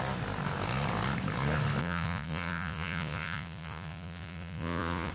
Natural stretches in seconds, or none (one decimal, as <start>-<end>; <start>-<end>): 0.0-1.8

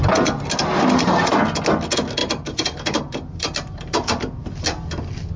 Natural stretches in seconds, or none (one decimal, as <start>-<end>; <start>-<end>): 0.0-2.2; 4.2-5.4

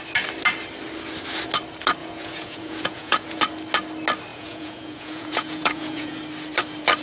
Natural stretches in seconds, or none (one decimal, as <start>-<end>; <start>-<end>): 0.0-2.0; 3.4-4.3; 6.2-7.0

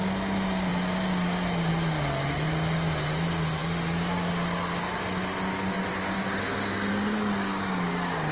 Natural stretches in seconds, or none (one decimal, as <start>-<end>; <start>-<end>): 0.0-6.9

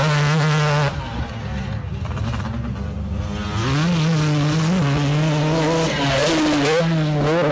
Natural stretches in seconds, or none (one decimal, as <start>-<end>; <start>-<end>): 0.0-7.5

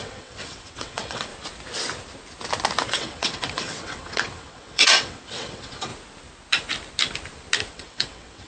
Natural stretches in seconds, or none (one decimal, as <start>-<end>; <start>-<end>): 1.3-2.9; 5.9-7.7